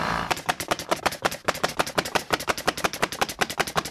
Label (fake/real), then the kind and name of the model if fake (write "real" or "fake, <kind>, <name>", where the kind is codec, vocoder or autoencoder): fake, vocoder, BigVGAN v2